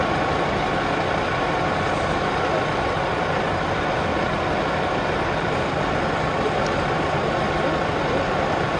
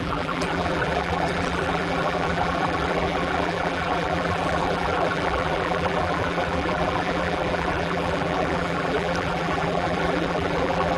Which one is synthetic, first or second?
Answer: second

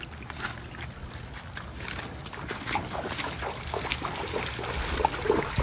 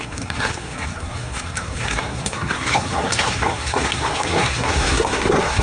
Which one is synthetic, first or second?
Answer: second